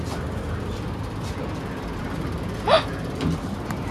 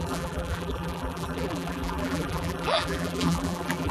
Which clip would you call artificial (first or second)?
second